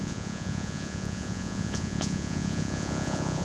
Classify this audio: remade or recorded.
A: remade